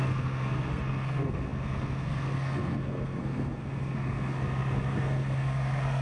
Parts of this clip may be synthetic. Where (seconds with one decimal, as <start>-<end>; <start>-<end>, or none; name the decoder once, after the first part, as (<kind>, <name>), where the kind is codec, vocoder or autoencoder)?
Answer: 0.0-6.0 (codec, SNAC)